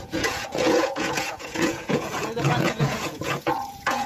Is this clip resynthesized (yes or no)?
yes